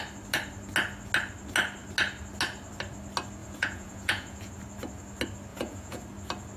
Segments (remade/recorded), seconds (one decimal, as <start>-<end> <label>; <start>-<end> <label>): 0.0-3.4 recorded; 3.4-4.5 remade; 4.5-5.5 recorded; 5.5-6.0 remade; 6.0-6.6 recorded